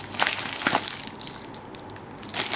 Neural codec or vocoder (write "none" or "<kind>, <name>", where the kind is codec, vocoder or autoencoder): none